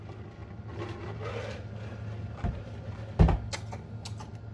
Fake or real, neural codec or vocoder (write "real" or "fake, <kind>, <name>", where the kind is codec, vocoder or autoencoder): real